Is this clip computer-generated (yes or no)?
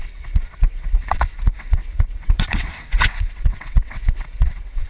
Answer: yes